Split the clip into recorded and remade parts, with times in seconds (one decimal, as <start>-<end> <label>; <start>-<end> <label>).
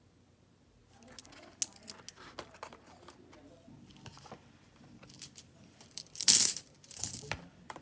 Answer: 0.0-0.8 remade; 0.8-2.4 recorded; 2.4-7.8 remade